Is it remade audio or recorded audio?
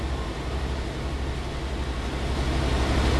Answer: recorded